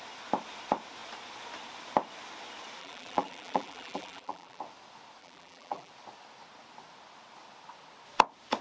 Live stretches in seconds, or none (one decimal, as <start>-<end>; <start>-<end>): 0.0-2.8; 4.6-5.2; 5.9-8.6